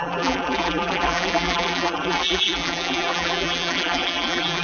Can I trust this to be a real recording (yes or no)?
no